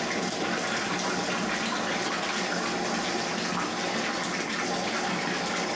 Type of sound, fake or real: real